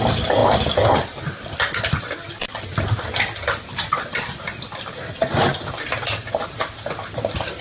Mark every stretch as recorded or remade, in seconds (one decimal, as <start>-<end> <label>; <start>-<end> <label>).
0.0-7.6 recorded